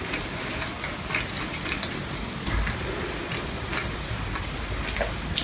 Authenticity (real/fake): real